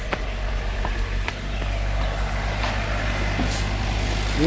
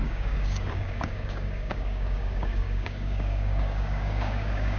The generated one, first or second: second